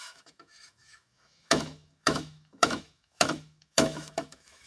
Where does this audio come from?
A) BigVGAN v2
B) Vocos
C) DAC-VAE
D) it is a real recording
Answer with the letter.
C